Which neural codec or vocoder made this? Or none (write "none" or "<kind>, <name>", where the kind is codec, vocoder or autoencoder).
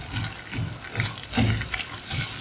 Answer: none